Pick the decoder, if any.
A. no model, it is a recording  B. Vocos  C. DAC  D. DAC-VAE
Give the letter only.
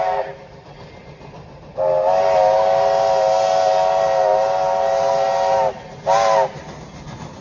A